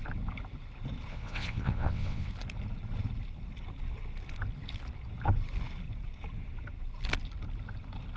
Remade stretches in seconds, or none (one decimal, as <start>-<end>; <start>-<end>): 1.1-2.3